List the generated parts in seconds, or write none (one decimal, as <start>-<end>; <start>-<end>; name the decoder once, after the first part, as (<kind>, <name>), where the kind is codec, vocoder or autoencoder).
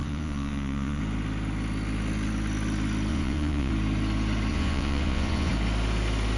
0.0-1.0 (vocoder, Vocos); 3.1-3.7; 4.5-5.5